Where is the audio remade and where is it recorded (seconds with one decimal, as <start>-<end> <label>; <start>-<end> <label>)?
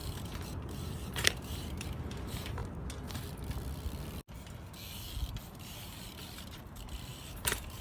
0.0-2.6 remade; 2.6-5.5 recorded; 5.5-7.8 remade